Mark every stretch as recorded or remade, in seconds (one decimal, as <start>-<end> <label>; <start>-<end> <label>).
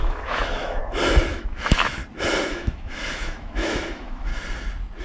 0.0-0.8 remade; 0.8-1.3 recorded; 1.3-2.0 remade; 2.0-2.5 recorded; 2.5-4.3 remade; 4.3-5.0 recorded